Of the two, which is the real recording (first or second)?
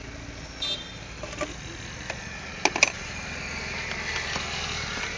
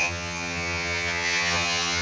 first